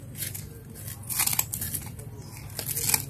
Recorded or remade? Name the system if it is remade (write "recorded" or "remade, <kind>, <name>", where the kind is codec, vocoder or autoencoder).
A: recorded